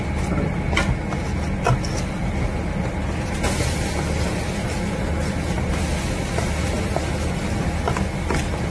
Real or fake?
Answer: real